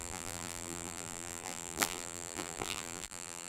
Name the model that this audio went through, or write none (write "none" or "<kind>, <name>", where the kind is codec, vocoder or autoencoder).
vocoder, BigVGAN v2